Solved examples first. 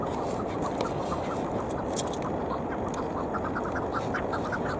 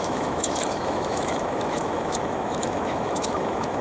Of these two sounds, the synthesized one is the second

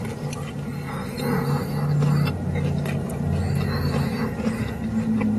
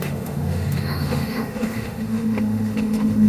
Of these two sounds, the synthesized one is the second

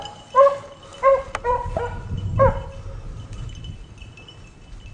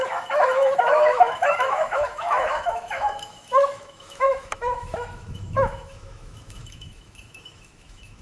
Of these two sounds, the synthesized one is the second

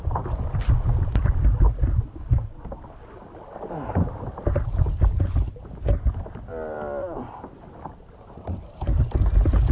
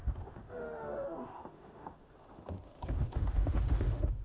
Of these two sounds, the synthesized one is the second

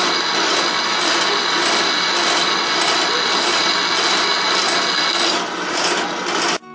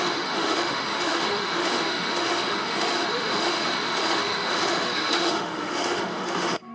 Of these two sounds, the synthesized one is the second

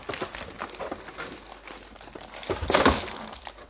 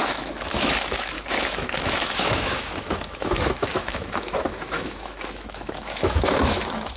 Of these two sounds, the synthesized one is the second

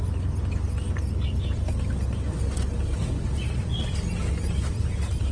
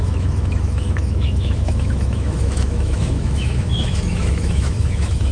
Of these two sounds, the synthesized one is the second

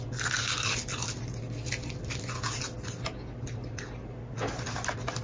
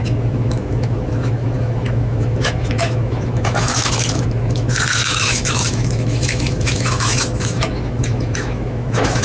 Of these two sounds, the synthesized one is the second